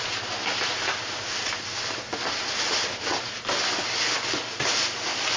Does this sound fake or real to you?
real